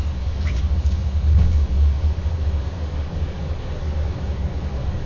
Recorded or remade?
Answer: remade